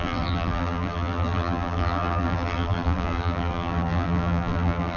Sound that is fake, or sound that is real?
fake